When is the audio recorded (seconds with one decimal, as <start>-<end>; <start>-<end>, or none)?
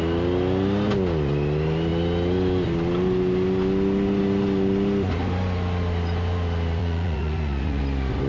0.0-6.8; 7.8-8.3